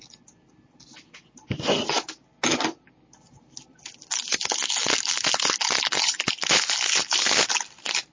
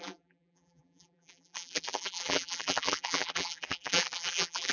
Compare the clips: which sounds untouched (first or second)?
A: first